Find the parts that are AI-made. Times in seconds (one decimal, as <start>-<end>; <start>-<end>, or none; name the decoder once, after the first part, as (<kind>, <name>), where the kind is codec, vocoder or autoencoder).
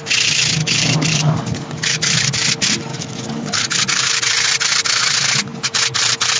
0.6-2.3 (codec, DAC); 2.9-4.1